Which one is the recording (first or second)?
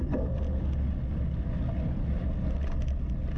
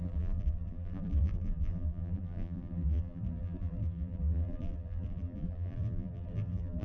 first